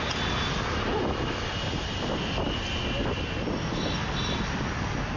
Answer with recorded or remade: recorded